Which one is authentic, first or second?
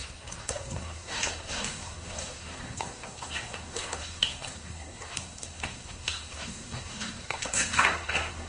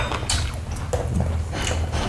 second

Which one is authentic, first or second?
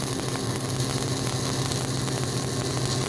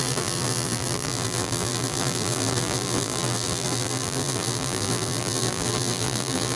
first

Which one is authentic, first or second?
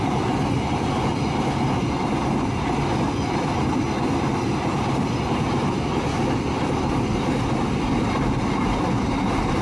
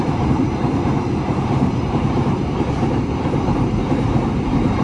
first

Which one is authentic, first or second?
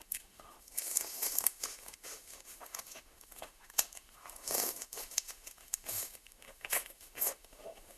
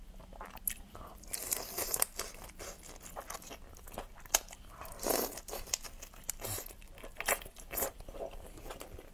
second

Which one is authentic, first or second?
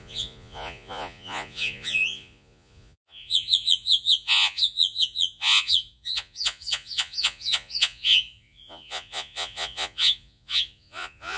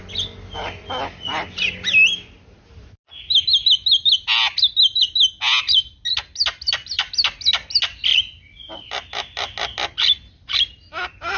second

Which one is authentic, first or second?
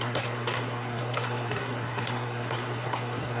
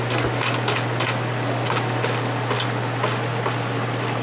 second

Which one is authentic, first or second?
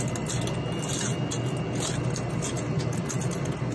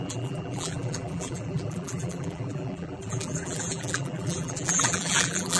first